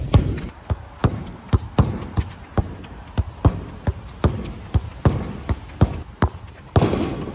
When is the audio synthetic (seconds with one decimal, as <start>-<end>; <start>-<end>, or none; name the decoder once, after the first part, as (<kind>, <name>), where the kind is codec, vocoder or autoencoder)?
none